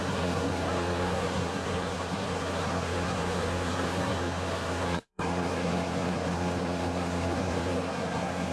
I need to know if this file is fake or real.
fake